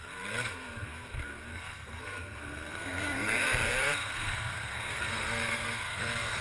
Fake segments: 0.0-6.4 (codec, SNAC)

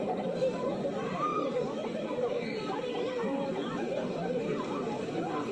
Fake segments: 1.3-4.4 (vocoder, BigVGAN v2)

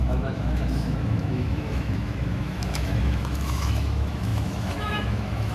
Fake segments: 0.0-5.5 (autoencoder, DAC-VAE)